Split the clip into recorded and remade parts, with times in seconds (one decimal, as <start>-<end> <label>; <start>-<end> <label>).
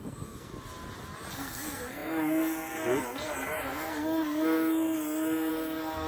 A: 0.0-0.5 remade; 0.5-1.3 recorded; 1.3-6.1 remade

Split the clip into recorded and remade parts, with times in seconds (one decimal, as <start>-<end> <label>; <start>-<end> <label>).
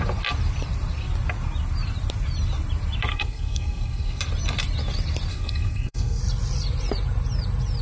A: 0.0-3.1 recorded; 3.1-4.2 remade; 4.2-5.3 recorded; 5.3-6.2 remade; 6.2-7.8 recorded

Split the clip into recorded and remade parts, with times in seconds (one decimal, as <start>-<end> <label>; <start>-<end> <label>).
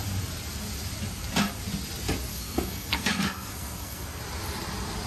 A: 0.0-2.3 recorded; 2.3-4.2 remade; 4.2-5.1 recorded